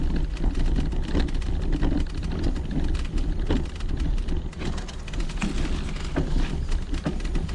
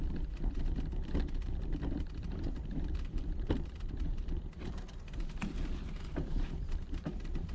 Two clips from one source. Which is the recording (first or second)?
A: first